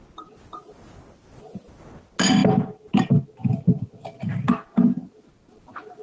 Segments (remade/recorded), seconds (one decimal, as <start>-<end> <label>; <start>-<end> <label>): 0.0-6.0 recorded